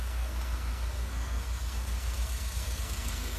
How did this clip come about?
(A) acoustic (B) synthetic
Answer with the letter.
B